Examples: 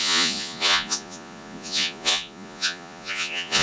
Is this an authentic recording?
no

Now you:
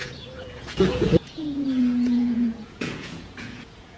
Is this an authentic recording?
no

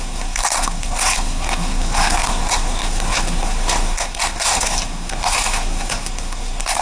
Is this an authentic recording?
no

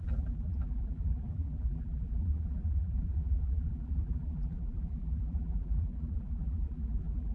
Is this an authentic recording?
no